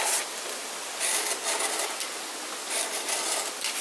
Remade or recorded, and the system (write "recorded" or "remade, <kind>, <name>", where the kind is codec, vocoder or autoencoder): recorded